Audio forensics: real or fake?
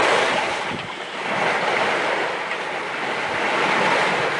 real